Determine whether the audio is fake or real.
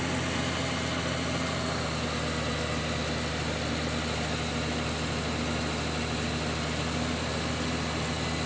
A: real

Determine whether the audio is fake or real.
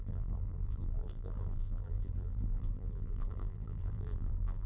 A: fake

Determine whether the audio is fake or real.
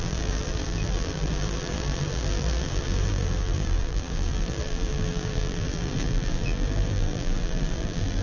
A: fake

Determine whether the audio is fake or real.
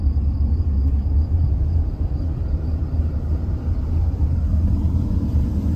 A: real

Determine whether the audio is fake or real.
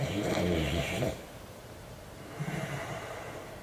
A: fake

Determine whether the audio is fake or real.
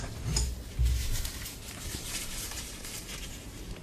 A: fake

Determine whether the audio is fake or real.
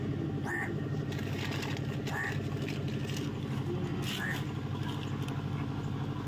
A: real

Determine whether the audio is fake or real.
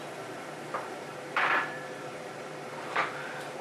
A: fake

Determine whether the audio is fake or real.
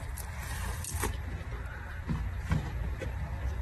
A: real